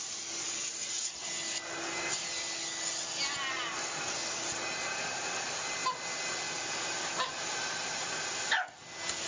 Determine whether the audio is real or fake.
real